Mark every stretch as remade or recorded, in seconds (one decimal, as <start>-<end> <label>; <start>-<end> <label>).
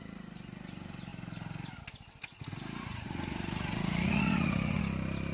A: 0.0-2.9 recorded; 2.9-4.8 remade; 4.8-5.3 recorded